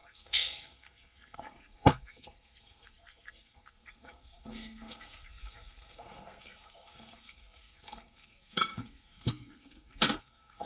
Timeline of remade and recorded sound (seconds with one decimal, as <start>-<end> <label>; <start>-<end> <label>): 0.0-10.7 remade